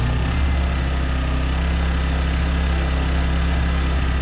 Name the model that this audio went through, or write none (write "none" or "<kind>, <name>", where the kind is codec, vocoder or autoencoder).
none